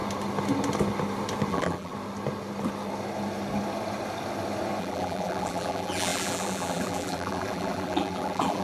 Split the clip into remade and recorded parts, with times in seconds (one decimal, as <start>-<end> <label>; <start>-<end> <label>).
0.0-1.5 recorded; 1.5-1.9 remade; 1.9-4.8 recorded; 4.8-8.6 remade